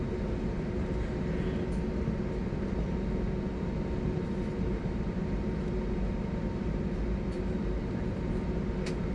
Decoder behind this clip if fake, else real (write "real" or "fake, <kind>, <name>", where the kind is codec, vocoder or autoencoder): real